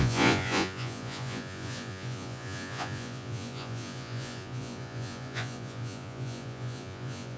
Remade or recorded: remade